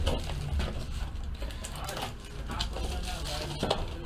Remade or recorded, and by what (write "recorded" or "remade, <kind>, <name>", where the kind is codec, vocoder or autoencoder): recorded